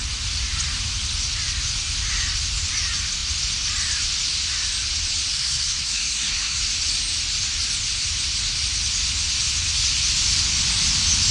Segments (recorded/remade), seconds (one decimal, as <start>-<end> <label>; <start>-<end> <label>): 0.0-5.3 recorded; 5.3-6.6 remade; 6.6-11.3 recorded

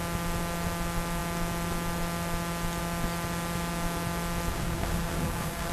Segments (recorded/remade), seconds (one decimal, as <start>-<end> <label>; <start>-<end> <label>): 0.0-4.5 recorded; 4.5-5.7 remade

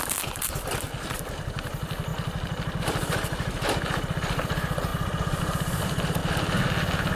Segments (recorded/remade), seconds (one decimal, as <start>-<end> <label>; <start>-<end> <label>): 0.0-2.1 remade; 2.1-2.8 recorded; 2.8-6.2 remade; 6.2-7.2 recorded

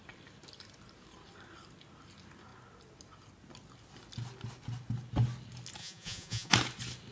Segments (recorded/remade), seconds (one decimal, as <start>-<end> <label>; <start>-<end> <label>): 0.0-5.8 recorded; 5.8-6.5 remade; 6.5-7.1 recorded

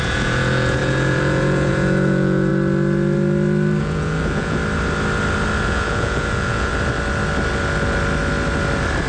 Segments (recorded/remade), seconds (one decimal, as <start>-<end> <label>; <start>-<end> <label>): 0.0-2.5 remade; 2.5-3.8 recorded; 3.8-4.6 remade; 4.6-5.6 recorded; 5.6-6.7 remade; 6.7-9.1 recorded